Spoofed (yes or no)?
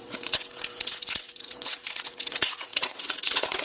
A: yes